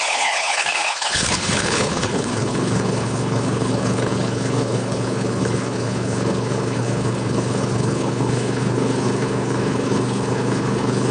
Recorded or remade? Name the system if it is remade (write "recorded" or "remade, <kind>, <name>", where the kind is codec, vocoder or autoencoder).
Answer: remade, codec, HILCodec